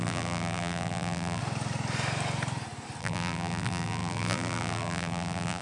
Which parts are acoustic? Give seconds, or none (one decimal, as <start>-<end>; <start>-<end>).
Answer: 1.4-3.0